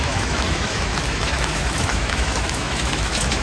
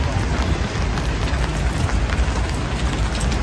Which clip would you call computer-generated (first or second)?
first